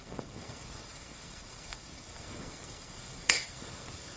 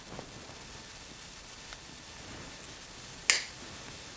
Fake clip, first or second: first